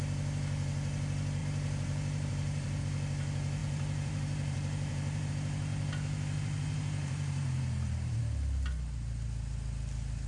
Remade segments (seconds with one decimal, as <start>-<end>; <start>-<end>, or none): 1.4-2.8; 3.6-5.3; 5.7-8.2